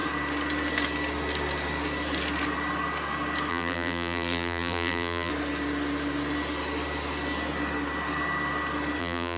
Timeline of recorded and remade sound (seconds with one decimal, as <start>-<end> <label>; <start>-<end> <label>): 0.0-3.5 recorded; 3.5-5.3 remade; 5.3-9.0 recorded; 9.0-9.4 remade